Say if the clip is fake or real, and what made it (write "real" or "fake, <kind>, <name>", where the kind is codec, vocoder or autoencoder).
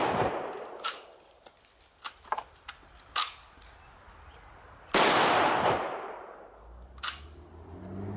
real